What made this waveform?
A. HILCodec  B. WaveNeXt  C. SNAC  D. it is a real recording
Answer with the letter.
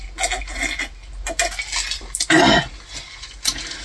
D